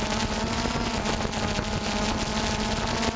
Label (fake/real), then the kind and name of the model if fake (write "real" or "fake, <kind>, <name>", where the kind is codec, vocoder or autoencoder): real